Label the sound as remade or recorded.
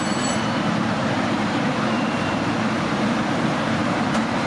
remade